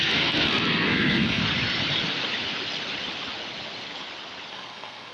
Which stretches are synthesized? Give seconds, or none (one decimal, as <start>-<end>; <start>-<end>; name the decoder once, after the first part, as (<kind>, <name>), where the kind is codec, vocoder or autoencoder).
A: 0.0-1.4 (codec, SNAC); 4.5-5.1